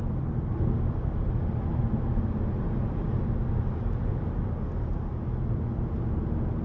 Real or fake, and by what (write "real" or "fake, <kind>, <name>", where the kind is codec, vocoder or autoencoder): real